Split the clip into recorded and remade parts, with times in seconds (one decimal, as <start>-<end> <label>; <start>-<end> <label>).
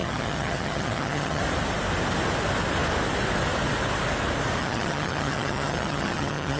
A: 0.0-1.4 remade; 1.4-4.6 recorded; 4.6-6.6 remade